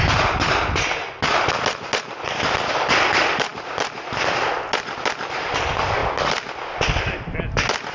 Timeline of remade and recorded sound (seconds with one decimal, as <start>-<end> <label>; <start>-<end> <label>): 0.0-7.9 recorded